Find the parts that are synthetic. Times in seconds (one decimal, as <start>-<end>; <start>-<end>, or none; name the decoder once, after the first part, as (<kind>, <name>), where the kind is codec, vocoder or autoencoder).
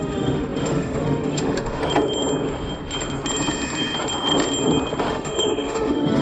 0.0-1.8 (autoencoder, DAC-VAE); 5.1-6.2